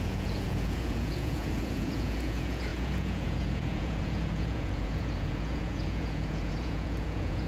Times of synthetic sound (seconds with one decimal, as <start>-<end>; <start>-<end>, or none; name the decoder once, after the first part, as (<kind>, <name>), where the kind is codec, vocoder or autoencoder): 0.0-7.5 (vocoder, Vocos)